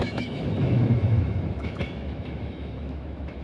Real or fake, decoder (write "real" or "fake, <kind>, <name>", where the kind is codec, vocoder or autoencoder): fake, autoencoder, DAC-VAE